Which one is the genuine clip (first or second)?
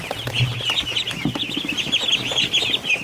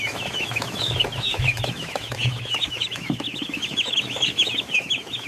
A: first